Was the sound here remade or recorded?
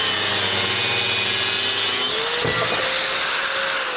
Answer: recorded